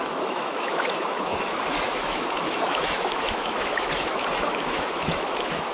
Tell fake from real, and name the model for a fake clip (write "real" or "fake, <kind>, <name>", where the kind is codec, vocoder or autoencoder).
fake, autoencoder, DAC-VAE